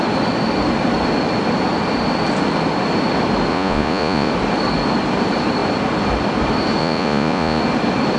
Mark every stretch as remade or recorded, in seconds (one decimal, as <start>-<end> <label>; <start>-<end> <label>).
0.0-3.5 recorded; 3.5-4.3 remade; 4.3-6.8 recorded; 6.8-7.6 remade; 7.6-8.2 recorded

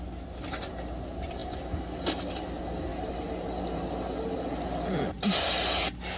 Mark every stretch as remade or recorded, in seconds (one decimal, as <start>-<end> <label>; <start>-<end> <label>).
0.0-6.2 recorded

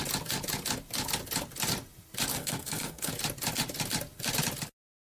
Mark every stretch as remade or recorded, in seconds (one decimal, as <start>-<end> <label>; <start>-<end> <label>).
0.0-2.3 recorded; 2.3-3.1 remade; 3.1-5.0 recorded

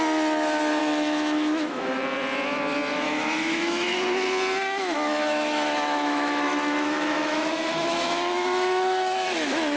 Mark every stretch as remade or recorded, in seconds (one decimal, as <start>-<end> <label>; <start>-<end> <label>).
0.0-0.8 recorded; 0.8-2.0 remade; 2.0-2.9 recorded; 2.9-4.0 remade; 4.0-4.6 recorded; 4.6-9.8 remade